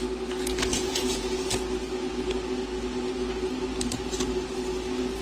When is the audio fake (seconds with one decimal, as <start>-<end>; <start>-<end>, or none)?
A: 0.7-1.5